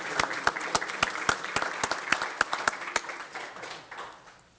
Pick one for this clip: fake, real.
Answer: real